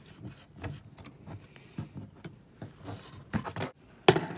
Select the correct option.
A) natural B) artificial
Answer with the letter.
A